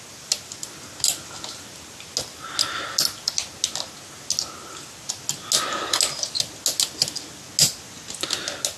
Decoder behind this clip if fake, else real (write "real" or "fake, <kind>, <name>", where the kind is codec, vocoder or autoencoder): real